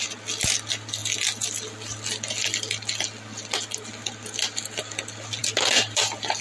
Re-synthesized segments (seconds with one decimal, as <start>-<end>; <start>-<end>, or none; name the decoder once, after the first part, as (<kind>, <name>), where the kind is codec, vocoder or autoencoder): none